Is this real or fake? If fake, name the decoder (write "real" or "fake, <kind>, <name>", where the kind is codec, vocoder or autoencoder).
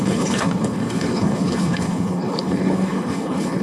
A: fake, codec, HILCodec